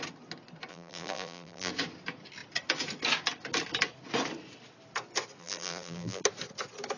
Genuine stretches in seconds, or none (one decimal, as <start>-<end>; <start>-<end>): 0.0-0.7; 1.7-5.4; 6.2-7.0